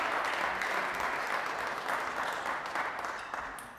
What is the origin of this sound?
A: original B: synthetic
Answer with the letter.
A